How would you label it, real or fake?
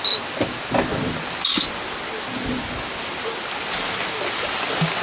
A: real